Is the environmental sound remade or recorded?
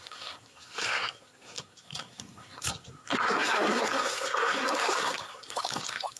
remade